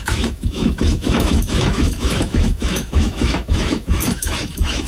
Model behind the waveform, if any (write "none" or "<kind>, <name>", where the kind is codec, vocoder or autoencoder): autoencoder, DAC-VAE